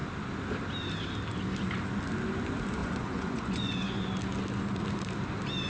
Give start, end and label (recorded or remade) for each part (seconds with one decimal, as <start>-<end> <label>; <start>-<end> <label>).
0.0-2.8 recorded; 2.8-4.1 remade; 4.1-5.7 recorded